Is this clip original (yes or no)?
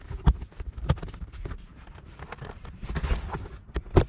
yes